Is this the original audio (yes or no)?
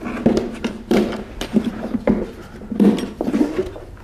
yes